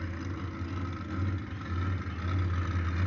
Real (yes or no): yes